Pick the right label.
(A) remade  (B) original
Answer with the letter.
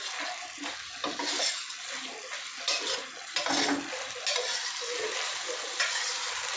B